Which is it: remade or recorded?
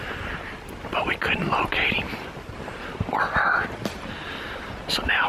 remade